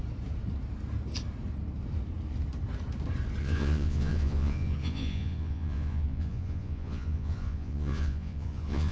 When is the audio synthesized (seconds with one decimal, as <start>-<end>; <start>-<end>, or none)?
3.4-8.9